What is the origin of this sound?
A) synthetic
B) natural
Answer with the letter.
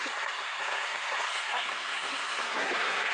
A